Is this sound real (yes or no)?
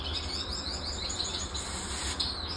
yes